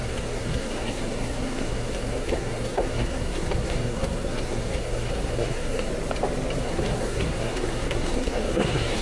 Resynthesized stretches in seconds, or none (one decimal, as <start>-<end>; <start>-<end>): 0.0-5.9; 6.6-9.0

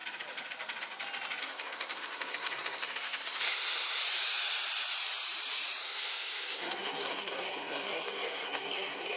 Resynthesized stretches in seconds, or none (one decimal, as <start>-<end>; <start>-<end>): 1.4-4.0; 5.8-9.2

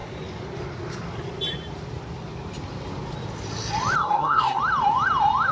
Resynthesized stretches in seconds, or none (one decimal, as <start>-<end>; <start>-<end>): 4.0-4.6

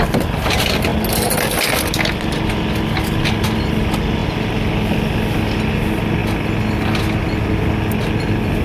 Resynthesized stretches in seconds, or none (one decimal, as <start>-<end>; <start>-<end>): none

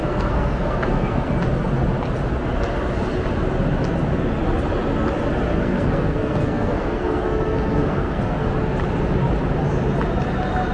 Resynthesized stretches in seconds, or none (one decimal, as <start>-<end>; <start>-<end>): 0.0-1.3; 5.5-8.5